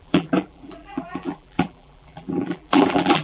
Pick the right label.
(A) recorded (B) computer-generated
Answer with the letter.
B